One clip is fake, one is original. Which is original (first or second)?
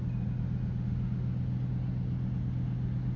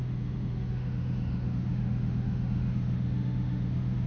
first